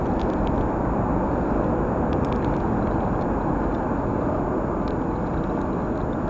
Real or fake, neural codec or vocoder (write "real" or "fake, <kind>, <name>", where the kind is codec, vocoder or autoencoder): real